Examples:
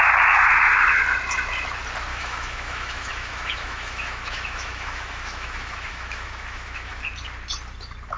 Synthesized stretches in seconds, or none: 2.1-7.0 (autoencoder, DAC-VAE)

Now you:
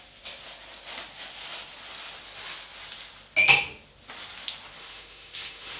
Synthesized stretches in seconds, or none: 4.8-5.8 (autoencoder, DAC-VAE)

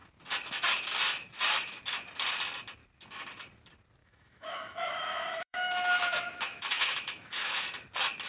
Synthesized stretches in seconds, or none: 4.0-7.6 (autoencoder, DAC-VAE)

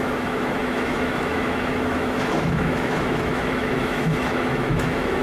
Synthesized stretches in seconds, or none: 0.0-5.2 (autoencoder, DAC-VAE)

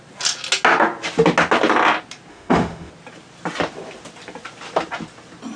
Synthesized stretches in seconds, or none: 2.3-2.9 (autoencoder, DAC-VAE)

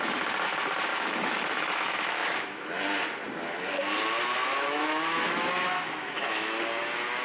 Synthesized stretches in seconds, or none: 0.9-2.8 (autoencoder, DAC-VAE); 4.4-6.6